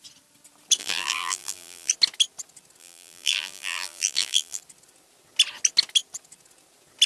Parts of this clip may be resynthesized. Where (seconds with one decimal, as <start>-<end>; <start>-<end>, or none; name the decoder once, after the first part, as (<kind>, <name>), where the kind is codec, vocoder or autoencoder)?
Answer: 0.8-1.9 (vocoder, BigVGAN v2); 2.8-4.6